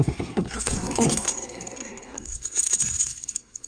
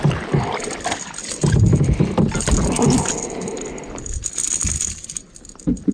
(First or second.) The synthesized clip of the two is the first